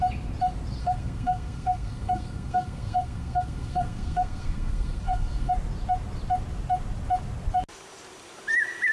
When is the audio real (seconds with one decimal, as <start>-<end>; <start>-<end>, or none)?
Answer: 0.0-0.8; 5.5-8.9